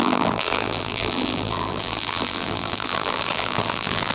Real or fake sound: fake